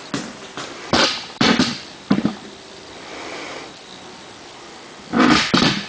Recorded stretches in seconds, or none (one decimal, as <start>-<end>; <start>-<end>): 0.0-0.9; 3.6-5.9